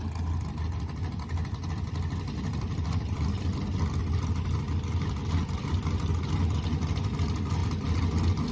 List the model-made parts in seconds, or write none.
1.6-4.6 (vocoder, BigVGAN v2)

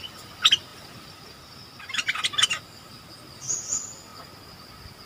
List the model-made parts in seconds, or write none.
0.7-1.8 (vocoder, BigVGAN v2); 2.5-3.4

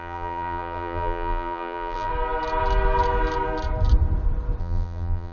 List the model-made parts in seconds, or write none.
0.0-2.1 (vocoder, BigVGAN v2); 4.6-5.3